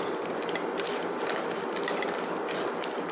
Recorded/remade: remade